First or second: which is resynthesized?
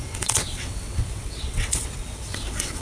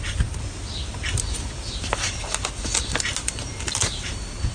first